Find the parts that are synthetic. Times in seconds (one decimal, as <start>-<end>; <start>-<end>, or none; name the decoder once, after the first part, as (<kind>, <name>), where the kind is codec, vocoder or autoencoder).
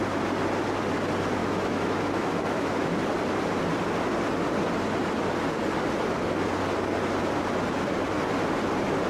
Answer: 1.4-3.0 (autoencoder, DAC-VAE)